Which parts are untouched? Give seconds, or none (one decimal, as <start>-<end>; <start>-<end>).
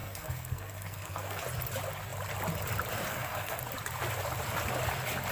1.4-3.1; 3.6-5.3